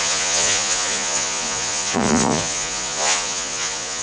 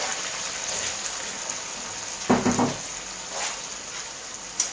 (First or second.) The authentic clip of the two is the second